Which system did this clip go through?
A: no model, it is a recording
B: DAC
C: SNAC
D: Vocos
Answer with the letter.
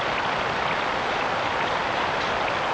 A